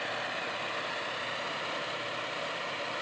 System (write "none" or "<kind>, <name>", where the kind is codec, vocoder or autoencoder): none